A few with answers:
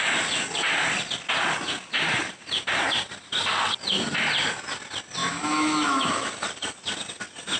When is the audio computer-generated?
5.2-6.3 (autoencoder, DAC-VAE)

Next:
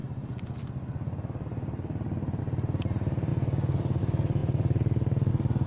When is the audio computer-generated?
2.4-3.3 (vocoder, BigVGAN v2); 4.0-5.7

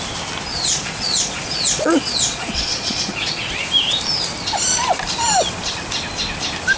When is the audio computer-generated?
0.5-3.5 (vocoder, Vocos)

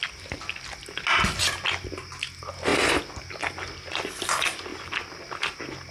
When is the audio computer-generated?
none

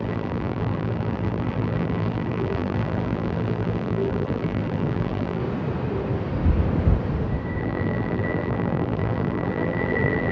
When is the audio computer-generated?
0.0-5.4 (vocoder, BigVGAN v2); 7.6-10.3

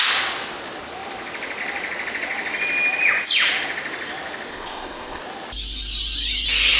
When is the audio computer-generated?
4.5-5.2 (codec, ZipCodec)

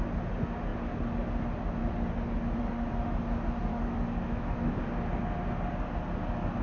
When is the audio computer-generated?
3.7-4.8 (autoencoder, DAC-VAE)